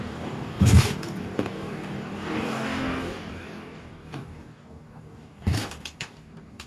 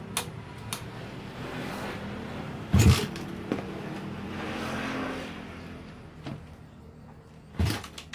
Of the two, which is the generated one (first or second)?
first